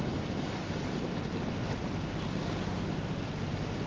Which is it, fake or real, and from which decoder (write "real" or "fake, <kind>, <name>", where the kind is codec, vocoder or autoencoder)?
real